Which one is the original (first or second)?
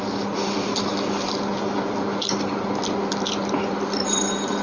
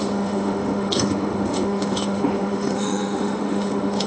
first